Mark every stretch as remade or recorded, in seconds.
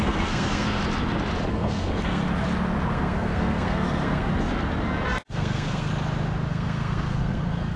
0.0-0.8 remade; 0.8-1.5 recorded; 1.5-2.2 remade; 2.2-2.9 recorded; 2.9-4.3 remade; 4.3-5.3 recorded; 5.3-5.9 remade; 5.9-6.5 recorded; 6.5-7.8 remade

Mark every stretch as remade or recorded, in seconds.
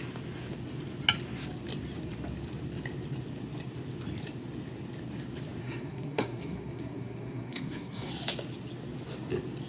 0.0-5.6 recorded; 5.6-8.1 remade; 8.1-9.7 recorded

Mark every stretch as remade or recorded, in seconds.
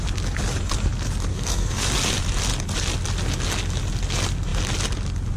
0.0-1.3 recorded; 1.3-1.9 remade; 1.9-5.4 recorded